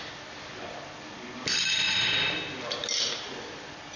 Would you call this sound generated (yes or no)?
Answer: no